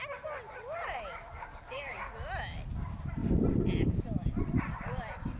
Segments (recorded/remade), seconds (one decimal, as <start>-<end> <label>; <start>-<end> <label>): 0.0-1.3 recorded; 1.3-2.0 remade; 2.0-5.4 recorded